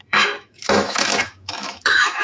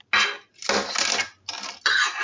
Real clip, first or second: second